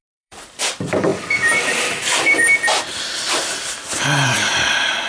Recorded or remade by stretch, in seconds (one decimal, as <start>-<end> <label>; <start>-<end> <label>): 0.0-5.1 remade